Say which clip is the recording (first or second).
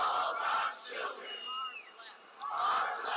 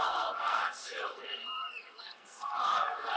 first